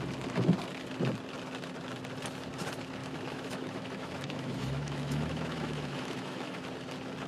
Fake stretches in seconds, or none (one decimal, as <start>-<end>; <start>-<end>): 3.0-6.6